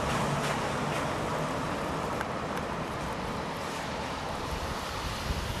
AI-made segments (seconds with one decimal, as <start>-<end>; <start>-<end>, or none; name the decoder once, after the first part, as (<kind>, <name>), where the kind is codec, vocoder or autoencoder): 1.3-4.7 (vocoder, BigVGAN v2)